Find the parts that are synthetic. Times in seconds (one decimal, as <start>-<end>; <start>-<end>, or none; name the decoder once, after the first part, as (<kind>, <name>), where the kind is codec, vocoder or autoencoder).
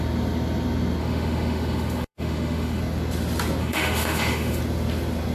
1.0-2.8 (autoencoder, DAC-VAE); 3.6-4.6